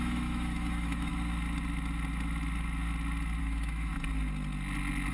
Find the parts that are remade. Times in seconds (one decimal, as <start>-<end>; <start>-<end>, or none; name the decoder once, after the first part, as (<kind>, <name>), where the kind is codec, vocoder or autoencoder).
0.0-1.1 (autoencoder, DAC-VAE); 3.4-3.9